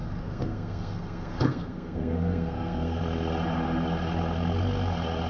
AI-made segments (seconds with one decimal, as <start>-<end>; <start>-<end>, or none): 0.0-3.0